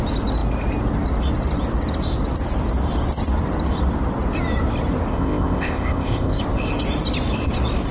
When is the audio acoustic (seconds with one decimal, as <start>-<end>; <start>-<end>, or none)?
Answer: 0.0-5.1; 6.4-7.9